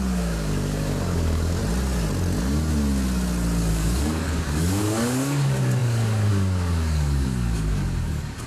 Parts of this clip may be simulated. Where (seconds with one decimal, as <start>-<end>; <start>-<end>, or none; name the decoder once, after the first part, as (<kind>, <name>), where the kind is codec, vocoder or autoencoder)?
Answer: 0.0-1.6 (codec, DAC); 3.7-8.5